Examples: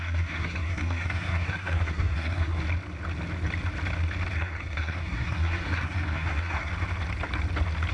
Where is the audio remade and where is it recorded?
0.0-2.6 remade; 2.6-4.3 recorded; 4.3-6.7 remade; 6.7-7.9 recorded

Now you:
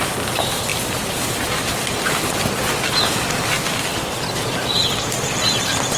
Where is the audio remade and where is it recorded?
0.0-6.0 remade

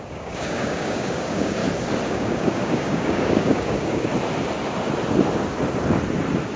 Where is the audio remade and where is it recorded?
0.0-1.6 remade; 1.6-2.1 recorded; 2.1-4.1 remade; 4.1-6.6 recorded